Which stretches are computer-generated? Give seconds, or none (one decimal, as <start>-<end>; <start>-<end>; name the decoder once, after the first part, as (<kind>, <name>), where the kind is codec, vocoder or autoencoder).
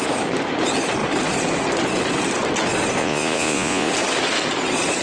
3.0-3.9 (vocoder, Vocos)